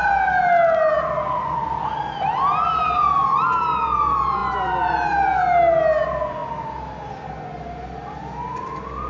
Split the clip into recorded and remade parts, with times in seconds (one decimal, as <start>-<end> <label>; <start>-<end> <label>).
0.0-9.1 recorded